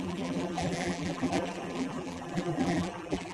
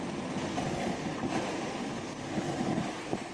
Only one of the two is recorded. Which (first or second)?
second